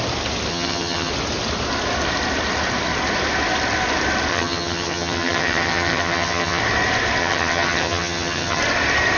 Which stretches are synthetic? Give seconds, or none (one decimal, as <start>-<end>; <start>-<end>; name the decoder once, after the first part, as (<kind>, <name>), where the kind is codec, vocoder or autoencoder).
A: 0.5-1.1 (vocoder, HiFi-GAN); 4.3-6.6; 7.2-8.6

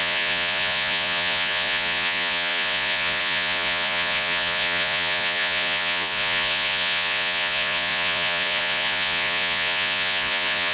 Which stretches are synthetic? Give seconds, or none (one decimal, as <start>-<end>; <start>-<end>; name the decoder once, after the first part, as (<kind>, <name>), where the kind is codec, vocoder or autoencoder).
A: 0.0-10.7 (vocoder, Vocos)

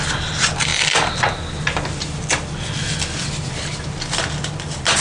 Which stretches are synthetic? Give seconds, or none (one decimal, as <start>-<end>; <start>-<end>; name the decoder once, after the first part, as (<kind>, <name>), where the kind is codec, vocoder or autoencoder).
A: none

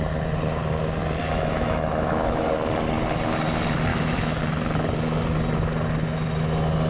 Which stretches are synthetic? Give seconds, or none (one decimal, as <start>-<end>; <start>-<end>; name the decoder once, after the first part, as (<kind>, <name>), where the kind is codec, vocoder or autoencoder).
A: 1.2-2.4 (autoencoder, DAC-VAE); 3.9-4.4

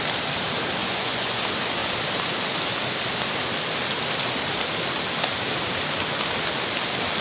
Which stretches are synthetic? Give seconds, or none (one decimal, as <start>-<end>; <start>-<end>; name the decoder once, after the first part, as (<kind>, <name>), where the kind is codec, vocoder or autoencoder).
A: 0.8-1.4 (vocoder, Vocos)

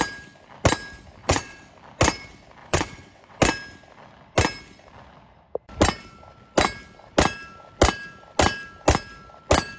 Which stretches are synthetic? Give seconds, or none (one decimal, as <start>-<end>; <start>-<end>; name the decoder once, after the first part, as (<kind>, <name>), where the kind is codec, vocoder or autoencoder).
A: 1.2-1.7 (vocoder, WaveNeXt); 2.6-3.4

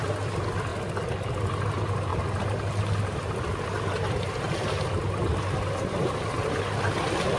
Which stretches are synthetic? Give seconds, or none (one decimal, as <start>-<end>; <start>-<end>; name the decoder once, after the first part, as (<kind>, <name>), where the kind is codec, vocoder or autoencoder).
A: none